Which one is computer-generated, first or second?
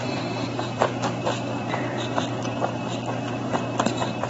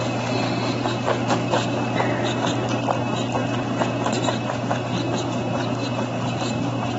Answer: first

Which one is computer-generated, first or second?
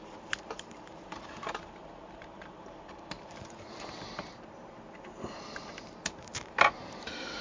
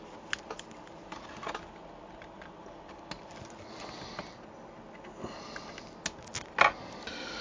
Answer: first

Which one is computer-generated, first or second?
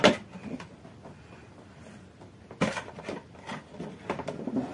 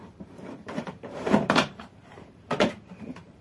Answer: second